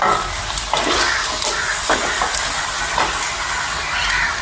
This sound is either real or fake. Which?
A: real